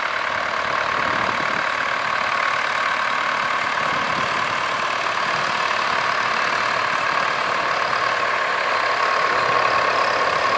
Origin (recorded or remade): recorded